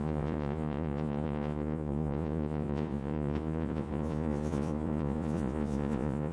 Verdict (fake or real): fake